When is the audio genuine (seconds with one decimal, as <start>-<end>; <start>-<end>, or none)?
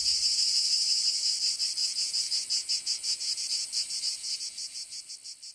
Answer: 0.0-1.8; 5.1-5.5